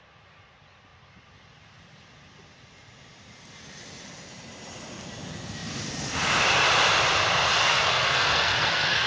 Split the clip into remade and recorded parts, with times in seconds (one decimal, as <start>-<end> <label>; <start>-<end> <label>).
0.0-7.6 recorded; 7.6-9.1 remade

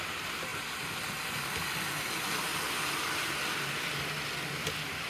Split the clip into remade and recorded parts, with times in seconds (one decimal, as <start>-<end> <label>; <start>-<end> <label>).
0.0-5.1 recorded

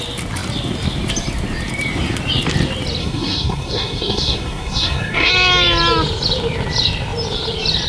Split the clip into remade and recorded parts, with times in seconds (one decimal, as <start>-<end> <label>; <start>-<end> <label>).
0.0-3.0 recorded; 3.0-5.3 remade; 5.3-7.9 recorded